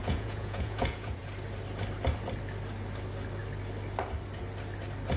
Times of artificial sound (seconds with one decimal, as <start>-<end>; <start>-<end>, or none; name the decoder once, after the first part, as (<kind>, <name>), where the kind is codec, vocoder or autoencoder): 0.0-1.2 (vocoder, Vocos)